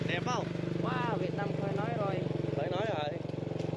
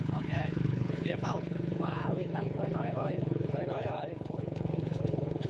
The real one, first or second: first